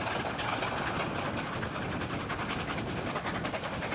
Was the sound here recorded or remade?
recorded